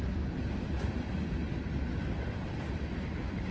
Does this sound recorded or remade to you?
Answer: remade